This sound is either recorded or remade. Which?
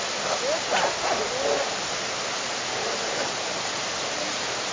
recorded